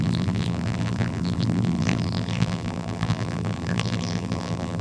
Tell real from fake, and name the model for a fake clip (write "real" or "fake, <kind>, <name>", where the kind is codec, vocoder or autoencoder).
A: fake, vocoder, BigVGAN v2